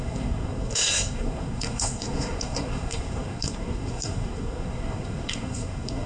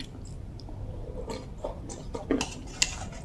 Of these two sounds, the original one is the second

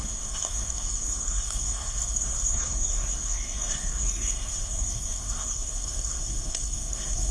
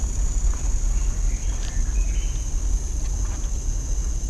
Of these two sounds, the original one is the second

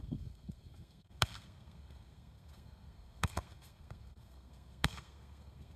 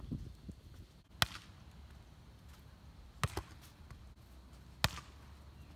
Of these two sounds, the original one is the second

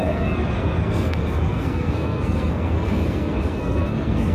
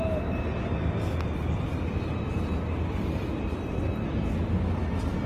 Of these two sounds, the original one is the second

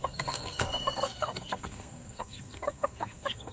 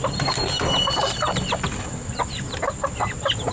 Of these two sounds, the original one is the second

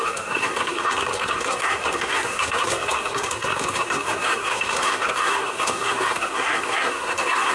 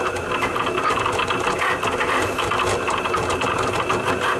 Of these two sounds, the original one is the second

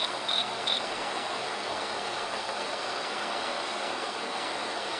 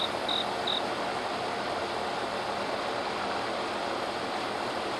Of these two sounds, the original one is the second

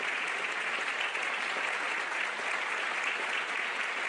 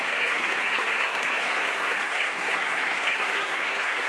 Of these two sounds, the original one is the first